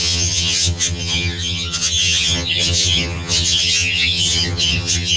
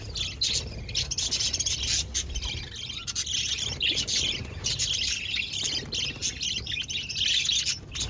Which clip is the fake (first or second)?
first